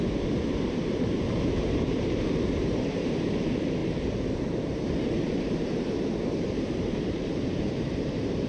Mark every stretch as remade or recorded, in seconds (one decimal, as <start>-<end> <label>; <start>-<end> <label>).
0.0-8.5 remade